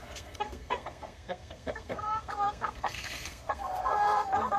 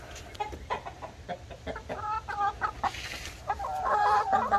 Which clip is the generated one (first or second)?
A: first